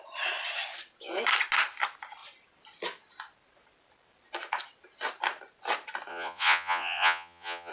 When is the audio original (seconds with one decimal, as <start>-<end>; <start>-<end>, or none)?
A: 0.0-6.1